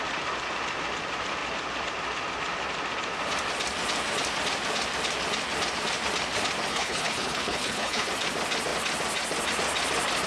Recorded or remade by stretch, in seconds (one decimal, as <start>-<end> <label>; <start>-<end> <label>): 0.0-6.7 recorded; 6.7-8.1 remade; 8.1-10.3 recorded

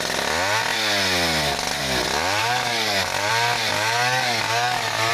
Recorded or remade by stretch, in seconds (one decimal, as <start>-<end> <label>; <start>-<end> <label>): 0.0-2.4 recorded; 2.4-3.3 remade; 3.3-3.7 recorded; 3.7-5.1 remade